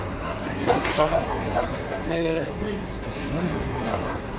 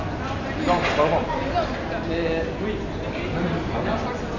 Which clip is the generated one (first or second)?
first